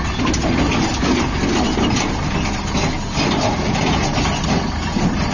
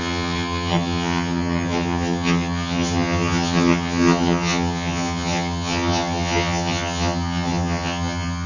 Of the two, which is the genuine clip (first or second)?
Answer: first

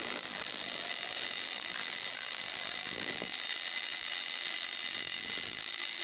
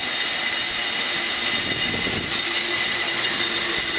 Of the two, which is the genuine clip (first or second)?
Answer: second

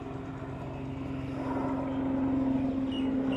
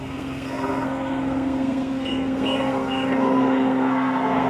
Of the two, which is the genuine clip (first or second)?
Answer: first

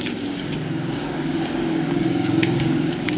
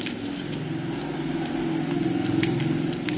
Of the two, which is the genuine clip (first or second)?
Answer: second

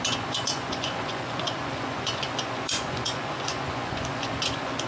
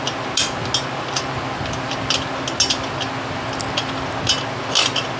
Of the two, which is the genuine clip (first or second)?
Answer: second